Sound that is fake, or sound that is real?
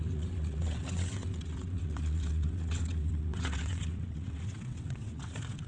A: fake